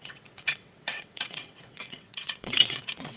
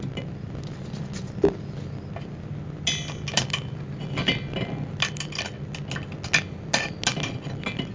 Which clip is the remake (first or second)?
first